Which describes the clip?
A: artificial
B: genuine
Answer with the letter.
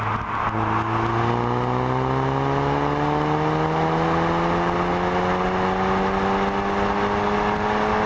B